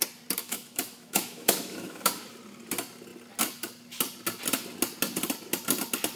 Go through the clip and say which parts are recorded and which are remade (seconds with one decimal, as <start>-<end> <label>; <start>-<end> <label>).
0.0-0.4 recorded; 0.4-2.1 remade; 2.1-6.2 recorded